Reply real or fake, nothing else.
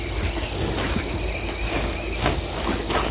real